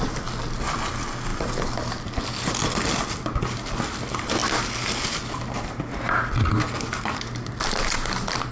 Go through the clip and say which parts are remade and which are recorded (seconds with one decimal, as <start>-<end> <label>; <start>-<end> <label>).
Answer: 0.0-8.5 recorded